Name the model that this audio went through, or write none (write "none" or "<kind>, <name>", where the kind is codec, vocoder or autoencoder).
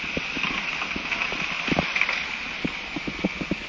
none